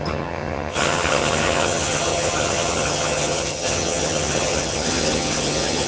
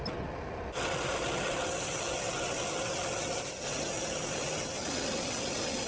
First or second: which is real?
second